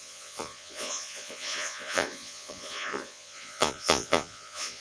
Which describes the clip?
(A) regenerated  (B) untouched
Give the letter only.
A